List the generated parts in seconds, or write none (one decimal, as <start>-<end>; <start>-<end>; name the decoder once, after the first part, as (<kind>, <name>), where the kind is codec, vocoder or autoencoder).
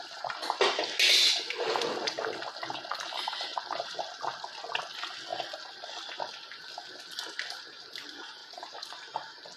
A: 3.5-4.1 (vocoder, BigVGAN v2); 8.4-9.0